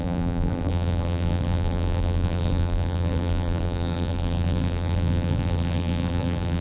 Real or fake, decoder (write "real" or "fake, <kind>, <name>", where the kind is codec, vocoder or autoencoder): fake, vocoder, BigVGAN v2